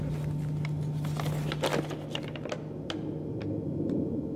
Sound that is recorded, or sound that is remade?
recorded